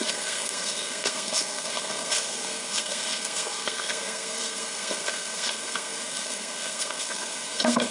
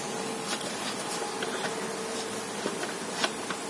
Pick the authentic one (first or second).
second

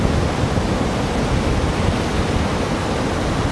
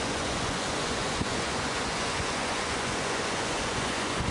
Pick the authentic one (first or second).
first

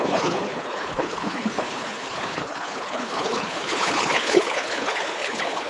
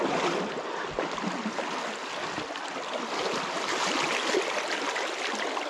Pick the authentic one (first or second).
second